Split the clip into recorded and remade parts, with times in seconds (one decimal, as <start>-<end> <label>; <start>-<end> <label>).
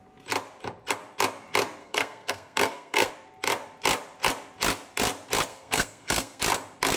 0.0-1.8 recorded; 1.8-3.1 remade; 3.1-5.5 recorded; 5.5-6.4 remade; 6.4-7.0 recorded